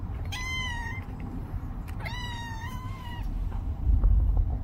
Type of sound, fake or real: fake